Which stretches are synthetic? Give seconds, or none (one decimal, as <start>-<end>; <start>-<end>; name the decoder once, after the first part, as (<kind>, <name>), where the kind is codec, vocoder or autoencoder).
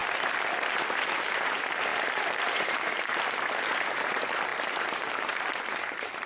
1.2-6.3 (vocoder, BigVGAN v2)